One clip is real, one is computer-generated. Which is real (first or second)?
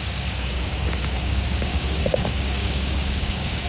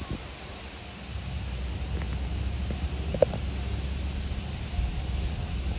second